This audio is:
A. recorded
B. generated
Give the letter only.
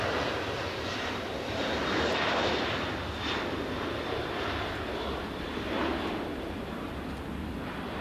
A